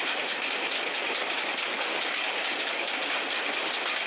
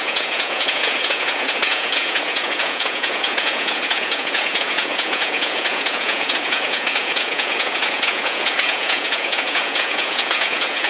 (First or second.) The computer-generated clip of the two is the second